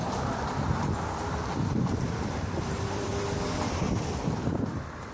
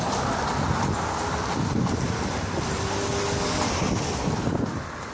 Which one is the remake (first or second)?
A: first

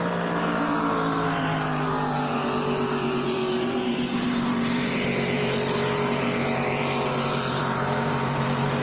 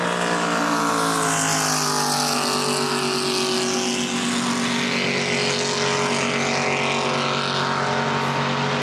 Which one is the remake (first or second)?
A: first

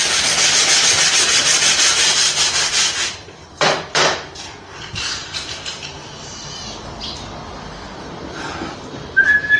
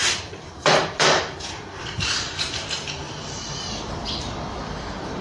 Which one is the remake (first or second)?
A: second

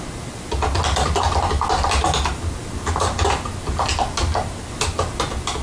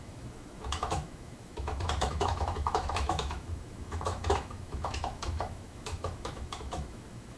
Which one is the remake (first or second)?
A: second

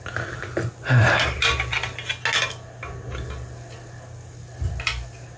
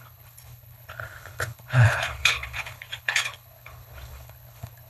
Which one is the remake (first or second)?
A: second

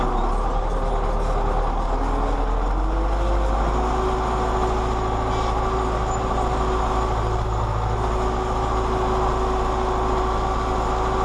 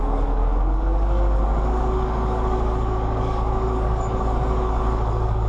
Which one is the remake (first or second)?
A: second